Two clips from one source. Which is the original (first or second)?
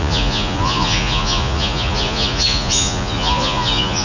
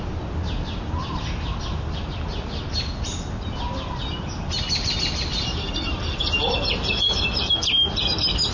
second